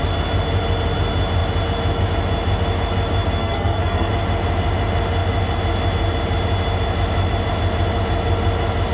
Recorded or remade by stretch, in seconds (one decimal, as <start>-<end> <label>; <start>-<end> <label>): 0.0-3.4 recorded; 3.4-4.1 remade; 4.1-8.9 recorded